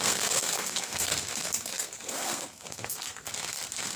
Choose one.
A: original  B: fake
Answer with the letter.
B